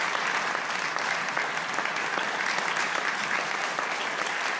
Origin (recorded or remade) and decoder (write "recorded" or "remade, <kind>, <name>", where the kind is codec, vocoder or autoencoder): recorded